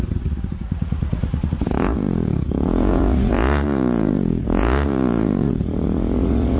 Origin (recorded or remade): remade